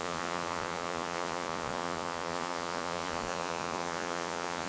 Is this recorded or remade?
remade